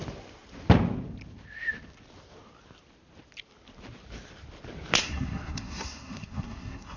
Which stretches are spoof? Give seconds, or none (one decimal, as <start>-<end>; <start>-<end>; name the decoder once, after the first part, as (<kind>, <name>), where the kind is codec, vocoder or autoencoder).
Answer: 5.0-7.0 (codec, SNAC)